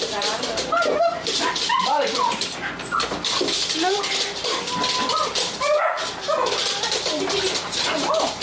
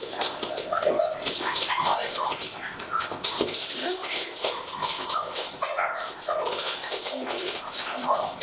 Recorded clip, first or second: first